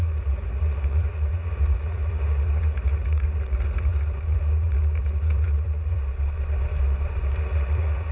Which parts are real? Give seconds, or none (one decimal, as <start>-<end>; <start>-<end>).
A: 6.0-7.4